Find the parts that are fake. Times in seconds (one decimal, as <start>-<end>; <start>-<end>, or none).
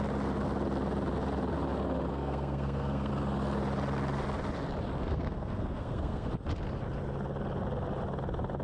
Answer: 2.1-3.1; 5.0-6.3